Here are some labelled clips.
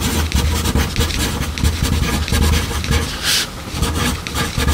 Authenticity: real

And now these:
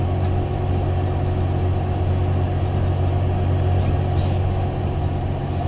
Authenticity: real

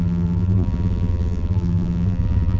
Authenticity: fake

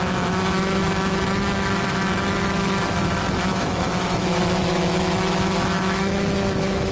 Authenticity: fake